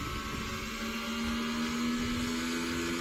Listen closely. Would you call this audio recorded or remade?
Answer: recorded